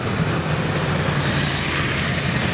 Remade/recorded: recorded